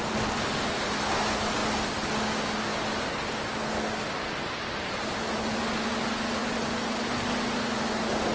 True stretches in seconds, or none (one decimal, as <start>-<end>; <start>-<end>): 0.0-4.7; 5.6-6.4; 7.1-8.3